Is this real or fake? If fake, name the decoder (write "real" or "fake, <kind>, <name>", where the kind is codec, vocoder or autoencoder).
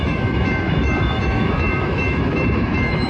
fake, autoencoder, DAC-VAE